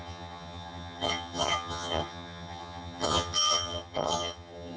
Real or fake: fake